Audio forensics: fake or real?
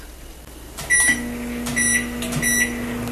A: real